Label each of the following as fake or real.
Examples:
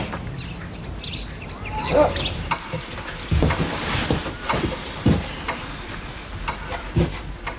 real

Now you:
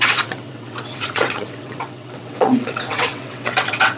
fake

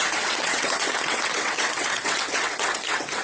fake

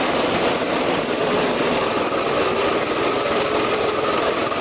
real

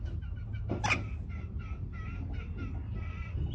real